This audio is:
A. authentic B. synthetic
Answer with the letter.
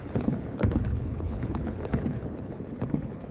B